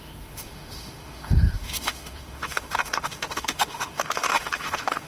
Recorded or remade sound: remade